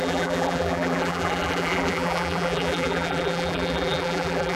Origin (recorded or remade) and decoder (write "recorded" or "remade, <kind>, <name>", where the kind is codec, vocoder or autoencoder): remade, vocoder, BigVGAN v2